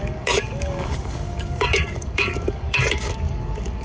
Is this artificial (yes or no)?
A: yes